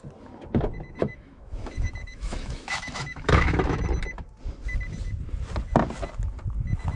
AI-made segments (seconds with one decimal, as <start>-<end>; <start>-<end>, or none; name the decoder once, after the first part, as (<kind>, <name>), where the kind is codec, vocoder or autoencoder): 1.0-3.8 (autoencoder, DAC-VAE)